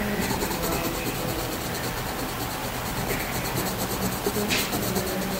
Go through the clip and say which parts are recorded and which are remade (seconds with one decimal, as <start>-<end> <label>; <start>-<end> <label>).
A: 0.0-2.6 recorded; 2.6-4.5 remade; 4.5-5.4 recorded